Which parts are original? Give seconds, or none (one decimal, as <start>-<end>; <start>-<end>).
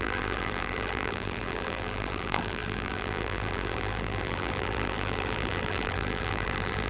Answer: none